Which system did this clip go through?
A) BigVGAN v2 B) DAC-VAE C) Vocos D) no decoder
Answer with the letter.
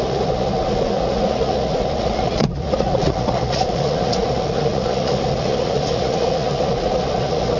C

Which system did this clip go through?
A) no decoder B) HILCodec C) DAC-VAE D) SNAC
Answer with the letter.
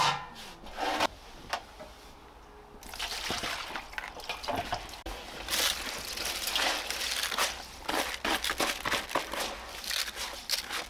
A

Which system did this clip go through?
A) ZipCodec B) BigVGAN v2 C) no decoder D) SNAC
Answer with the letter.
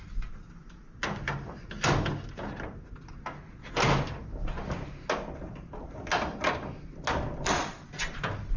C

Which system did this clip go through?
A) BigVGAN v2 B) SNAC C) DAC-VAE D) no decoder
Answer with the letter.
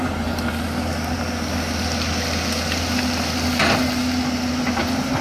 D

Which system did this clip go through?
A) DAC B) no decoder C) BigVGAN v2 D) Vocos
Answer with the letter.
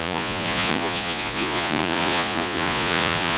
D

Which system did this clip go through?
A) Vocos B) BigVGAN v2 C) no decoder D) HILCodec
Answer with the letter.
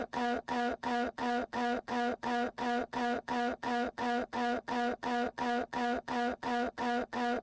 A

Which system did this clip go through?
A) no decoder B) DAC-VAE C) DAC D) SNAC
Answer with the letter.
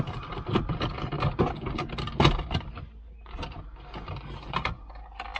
A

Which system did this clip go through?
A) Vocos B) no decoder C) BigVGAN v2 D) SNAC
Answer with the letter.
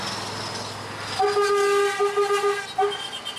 B